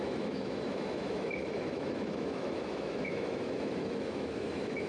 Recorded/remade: remade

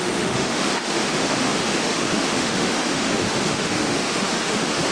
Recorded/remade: remade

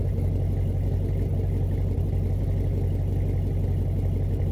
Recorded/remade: recorded